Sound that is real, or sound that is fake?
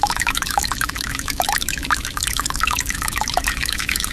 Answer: fake